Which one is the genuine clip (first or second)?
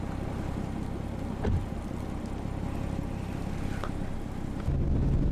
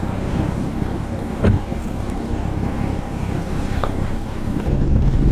first